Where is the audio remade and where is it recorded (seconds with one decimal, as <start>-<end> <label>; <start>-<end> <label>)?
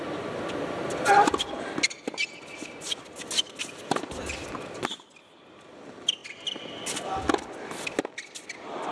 0.0-8.9 recorded